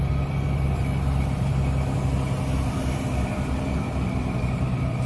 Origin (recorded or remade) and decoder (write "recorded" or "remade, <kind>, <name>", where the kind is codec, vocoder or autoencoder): remade, vocoder, BigVGAN v2